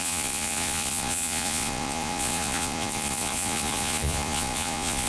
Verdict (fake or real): fake